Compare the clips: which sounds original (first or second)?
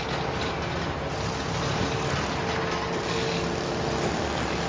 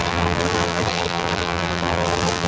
first